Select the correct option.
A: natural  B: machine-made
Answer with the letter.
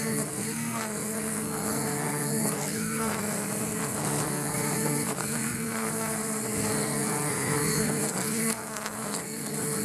B